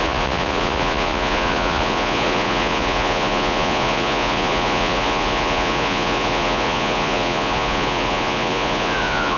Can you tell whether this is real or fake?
fake